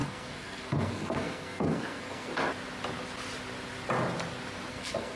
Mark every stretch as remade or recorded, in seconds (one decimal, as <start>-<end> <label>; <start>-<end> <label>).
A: 0.0-2.3 remade; 2.3-4.7 recorded; 4.7-5.2 remade

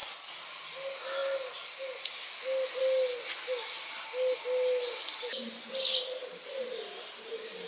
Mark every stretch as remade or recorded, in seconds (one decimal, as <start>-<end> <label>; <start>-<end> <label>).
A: 0.0-7.7 recorded

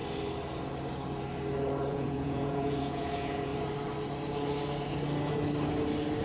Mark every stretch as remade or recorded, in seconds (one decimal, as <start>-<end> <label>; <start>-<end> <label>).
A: 0.0-1.9 recorded; 1.9-3.5 remade; 3.5-6.2 recorded

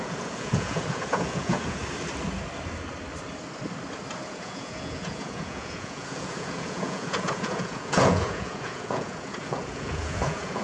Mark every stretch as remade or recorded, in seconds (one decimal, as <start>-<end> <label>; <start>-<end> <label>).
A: 0.0-1.8 remade; 1.8-4.3 recorded; 4.3-10.6 remade